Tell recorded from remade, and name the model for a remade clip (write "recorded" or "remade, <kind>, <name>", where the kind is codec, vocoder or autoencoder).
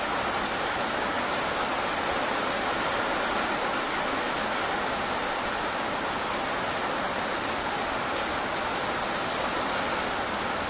recorded